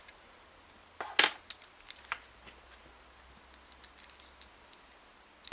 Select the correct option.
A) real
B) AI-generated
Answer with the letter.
A